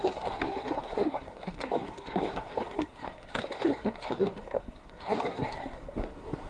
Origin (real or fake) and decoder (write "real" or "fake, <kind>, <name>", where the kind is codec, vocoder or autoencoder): fake, codec, SNAC